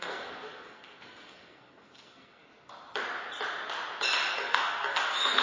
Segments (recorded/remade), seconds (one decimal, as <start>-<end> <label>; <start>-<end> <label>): 0.0-2.4 remade; 2.4-4.3 recorded; 4.3-5.4 remade